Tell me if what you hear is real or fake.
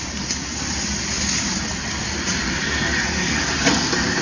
real